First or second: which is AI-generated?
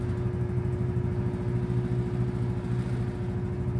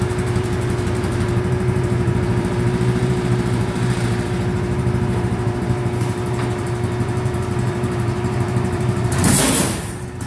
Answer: second